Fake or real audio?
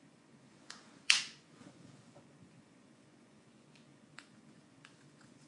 fake